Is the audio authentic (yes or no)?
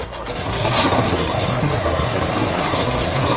no